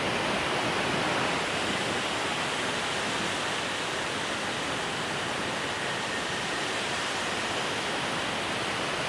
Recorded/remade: recorded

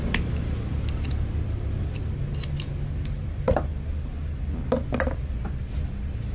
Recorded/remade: recorded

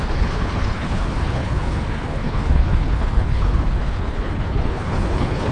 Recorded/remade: remade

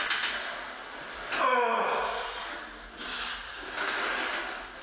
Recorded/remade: recorded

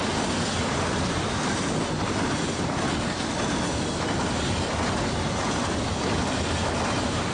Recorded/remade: recorded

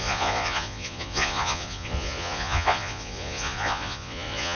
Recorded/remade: remade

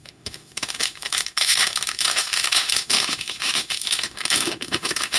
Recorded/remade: remade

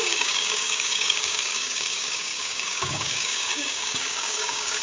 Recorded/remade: remade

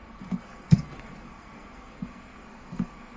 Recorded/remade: remade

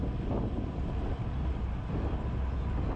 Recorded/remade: recorded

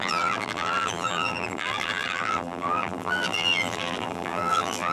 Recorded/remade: remade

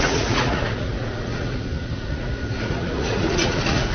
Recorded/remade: remade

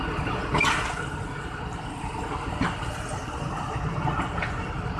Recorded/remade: recorded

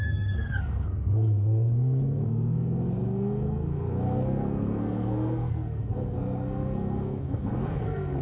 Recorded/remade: remade